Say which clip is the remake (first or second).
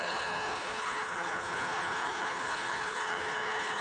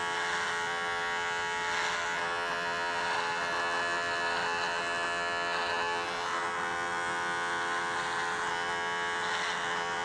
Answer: first